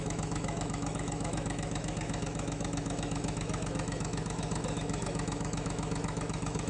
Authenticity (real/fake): fake